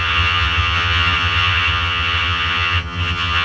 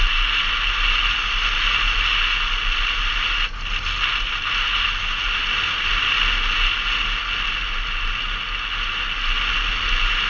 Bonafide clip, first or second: second